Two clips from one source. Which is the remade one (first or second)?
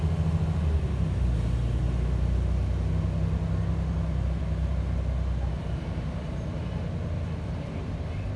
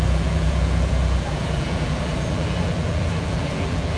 second